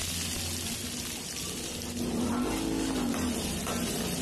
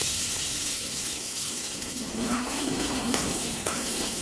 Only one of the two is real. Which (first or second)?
first